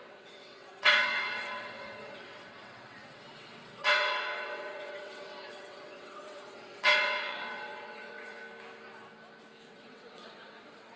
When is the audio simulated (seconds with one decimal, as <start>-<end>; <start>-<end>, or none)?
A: 0.0-8.4; 9.7-11.0